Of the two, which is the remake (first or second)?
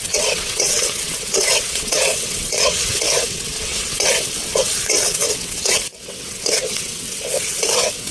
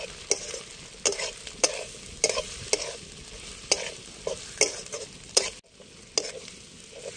first